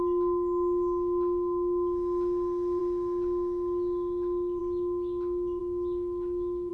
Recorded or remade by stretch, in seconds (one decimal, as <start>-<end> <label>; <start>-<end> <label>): 0.0-6.7 recorded

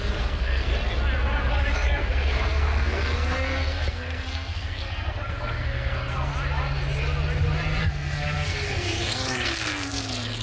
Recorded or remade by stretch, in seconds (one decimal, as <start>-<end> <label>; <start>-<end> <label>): 0.0-0.7 remade; 0.7-1.5 recorded; 1.5-6.3 remade; 6.3-7.8 recorded; 7.8-10.4 remade

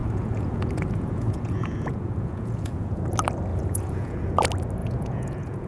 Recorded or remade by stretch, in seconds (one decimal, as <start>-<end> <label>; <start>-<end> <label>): 0.0-3.0 remade; 3.0-3.5 recorded; 3.5-4.3 remade; 4.3-4.8 recorded; 4.8-5.7 remade

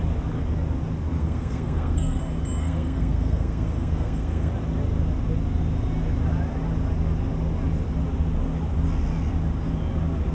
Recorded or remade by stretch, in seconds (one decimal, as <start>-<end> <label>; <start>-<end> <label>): 0.0-1.2 recorded; 1.2-2.2 remade; 2.2-2.6 recorded; 2.6-4.5 remade; 4.5-10.3 recorded

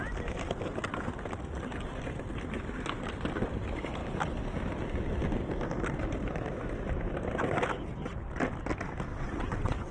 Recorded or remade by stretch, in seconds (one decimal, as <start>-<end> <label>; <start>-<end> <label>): 0.0-9.1 recorded; 9.1-9.9 remade

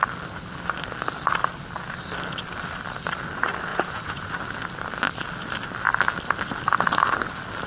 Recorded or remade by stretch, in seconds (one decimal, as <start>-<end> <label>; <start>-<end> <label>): 0.0-3.7 recorded; 3.7-4.3 remade; 4.3-7.7 recorded